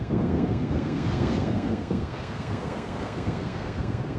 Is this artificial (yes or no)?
yes